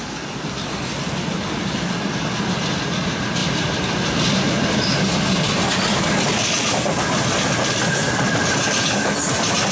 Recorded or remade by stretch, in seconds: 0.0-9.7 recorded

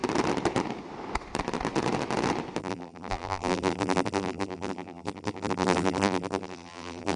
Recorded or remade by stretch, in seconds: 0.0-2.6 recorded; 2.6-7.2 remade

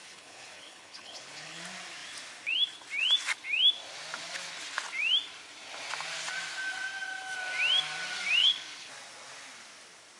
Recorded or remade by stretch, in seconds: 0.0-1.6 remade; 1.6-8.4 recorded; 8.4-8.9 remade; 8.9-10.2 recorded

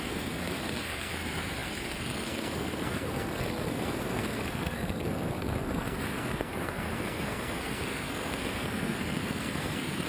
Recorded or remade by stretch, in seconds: 0.0-10.1 remade

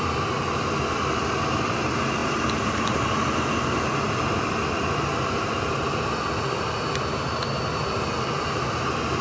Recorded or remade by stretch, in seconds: 0.0-9.2 remade

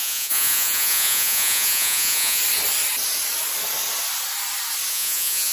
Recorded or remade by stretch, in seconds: 0.0-2.4 remade; 2.4-4.9 recorded; 4.9-5.5 remade

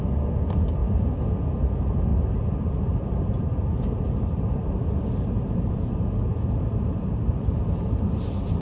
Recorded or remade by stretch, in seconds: 0.0-2.1 recorded; 2.1-5.7 remade; 5.7-8.6 recorded

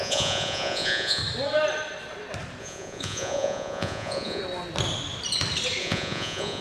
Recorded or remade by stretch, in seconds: 0.0-1.2 remade; 1.2-2.6 recorded; 2.6-4.4 remade; 4.4-5.8 recorded; 5.8-6.6 remade